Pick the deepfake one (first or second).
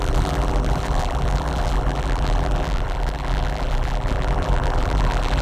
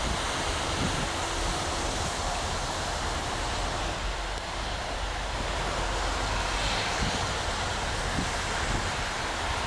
first